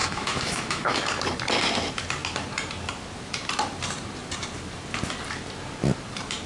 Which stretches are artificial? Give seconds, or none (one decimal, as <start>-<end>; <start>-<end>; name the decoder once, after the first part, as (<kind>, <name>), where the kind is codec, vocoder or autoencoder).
0.0-1.2 (autoencoder, DAC-VAE)